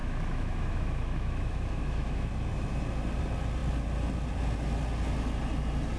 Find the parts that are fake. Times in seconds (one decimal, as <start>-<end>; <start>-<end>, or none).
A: 0.0-2.3